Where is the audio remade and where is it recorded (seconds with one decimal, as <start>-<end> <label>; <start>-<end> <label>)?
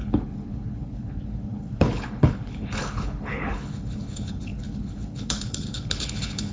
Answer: 0.0-6.5 remade